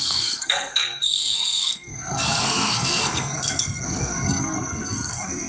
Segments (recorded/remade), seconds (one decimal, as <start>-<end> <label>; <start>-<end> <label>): 0.0-5.5 remade